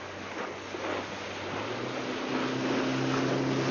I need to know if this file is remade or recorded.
recorded